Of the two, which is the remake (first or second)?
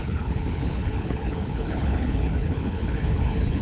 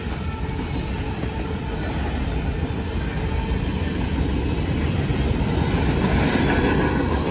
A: first